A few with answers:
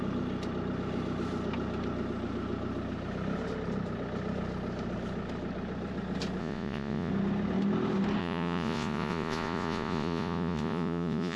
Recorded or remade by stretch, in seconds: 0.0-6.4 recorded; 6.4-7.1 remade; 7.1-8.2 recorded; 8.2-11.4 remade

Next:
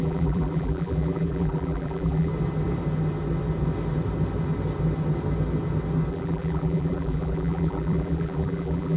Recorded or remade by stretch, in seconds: 0.0-2.3 remade; 2.3-6.1 recorded; 6.1-9.0 remade

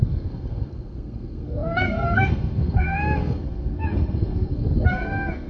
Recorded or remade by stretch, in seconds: 0.0-5.5 remade